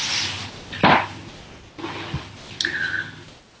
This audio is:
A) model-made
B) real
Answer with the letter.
B